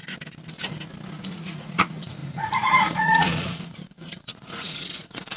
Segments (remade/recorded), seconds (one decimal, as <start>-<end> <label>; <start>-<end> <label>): 0.0-1.3 recorded; 1.3-5.4 remade